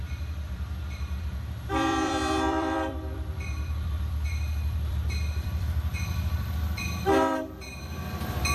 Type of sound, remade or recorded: remade